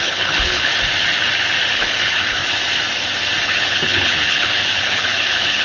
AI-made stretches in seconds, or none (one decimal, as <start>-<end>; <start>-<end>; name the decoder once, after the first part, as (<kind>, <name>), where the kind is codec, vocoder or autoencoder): 0.0-0.7 (codec, HILCodec); 1.7-2.4; 3.4-5.6

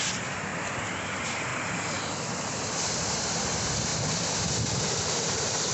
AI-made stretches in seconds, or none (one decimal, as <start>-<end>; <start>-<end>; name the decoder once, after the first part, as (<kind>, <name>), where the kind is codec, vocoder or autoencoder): 0.0-0.5 (vocoder, BigVGAN v2); 1.0-1.5; 2.5-3.9; 5.2-5.7

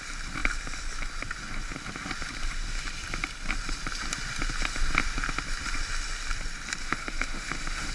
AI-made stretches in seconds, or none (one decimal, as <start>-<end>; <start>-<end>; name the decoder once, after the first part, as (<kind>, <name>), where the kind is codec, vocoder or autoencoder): 6.8-7.9 (autoencoder, DAC-VAE)

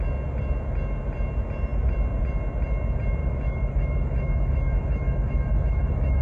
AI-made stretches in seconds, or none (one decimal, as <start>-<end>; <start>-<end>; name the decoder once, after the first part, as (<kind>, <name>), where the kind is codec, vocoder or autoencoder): 3.2-6.2 (autoencoder, DAC-VAE)

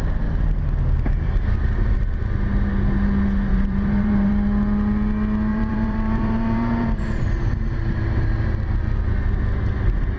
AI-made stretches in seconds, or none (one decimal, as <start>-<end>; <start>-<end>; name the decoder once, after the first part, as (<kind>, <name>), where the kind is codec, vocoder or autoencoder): 3.5-4.3 (vocoder, BigVGAN v2); 5.5-7.2

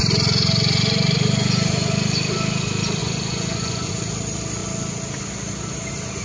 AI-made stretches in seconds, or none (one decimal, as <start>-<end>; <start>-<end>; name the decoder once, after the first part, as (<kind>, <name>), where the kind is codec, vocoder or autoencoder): 3.0-3.9 (vocoder, Vocos)